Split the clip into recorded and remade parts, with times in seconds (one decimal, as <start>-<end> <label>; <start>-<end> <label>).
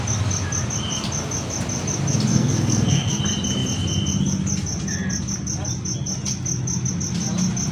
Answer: 0.0-2.3 recorded; 2.3-3.2 remade; 3.2-7.7 recorded